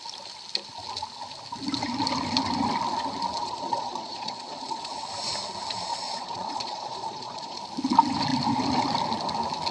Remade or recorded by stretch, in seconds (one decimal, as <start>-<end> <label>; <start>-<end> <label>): 0.0-3.4 recorded; 3.4-4.9 remade; 4.9-5.9 recorded; 5.9-7.6 remade; 7.6-9.7 recorded

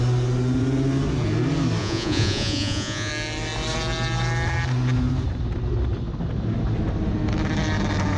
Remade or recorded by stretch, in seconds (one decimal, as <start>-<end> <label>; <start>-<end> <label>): 0.0-1.8 recorded; 1.8-3.1 remade; 3.1-8.2 recorded

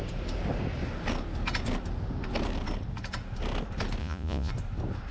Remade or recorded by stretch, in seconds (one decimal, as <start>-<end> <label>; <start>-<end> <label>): 0.0-4.0 recorded; 4.0-4.5 remade; 4.5-5.1 recorded

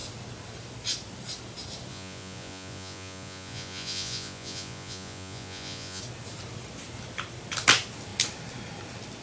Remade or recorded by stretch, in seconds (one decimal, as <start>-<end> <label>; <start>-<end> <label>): 0.0-1.9 recorded; 1.9-6.0 remade; 6.0-9.2 recorded

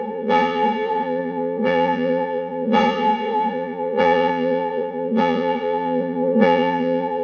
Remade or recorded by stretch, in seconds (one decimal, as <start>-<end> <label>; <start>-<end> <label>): 0.0-7.2 remade